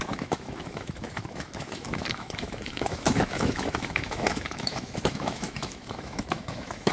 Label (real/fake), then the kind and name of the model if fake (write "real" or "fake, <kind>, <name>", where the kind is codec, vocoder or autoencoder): fake, autoencoder, DAC-VAE